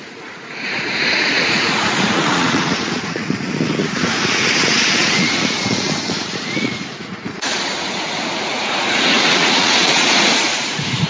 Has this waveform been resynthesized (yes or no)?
yes